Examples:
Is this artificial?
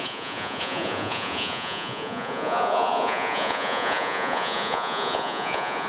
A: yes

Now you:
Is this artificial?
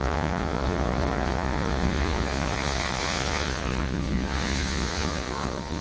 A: yes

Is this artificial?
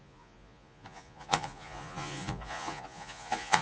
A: yes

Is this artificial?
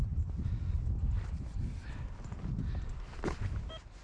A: no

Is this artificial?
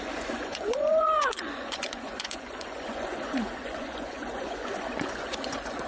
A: yes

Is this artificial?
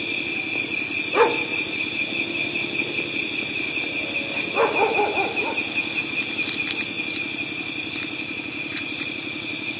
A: no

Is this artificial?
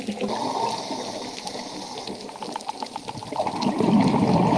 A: no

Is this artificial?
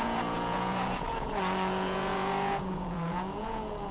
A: yes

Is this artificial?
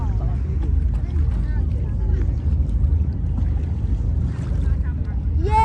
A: no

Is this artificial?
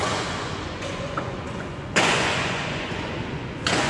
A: yes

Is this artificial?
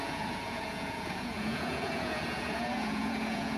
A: yes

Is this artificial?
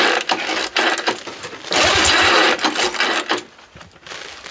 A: no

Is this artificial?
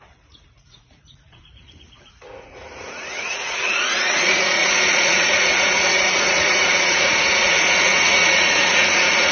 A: yes